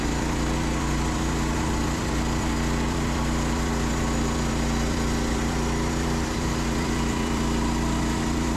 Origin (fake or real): fake